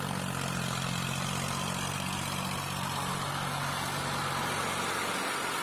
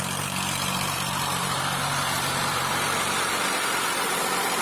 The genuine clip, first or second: first